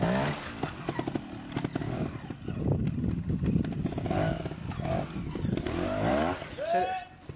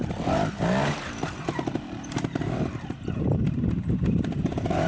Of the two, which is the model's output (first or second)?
second